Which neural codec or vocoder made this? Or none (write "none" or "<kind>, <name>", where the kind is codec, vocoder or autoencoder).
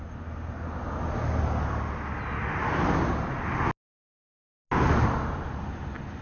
none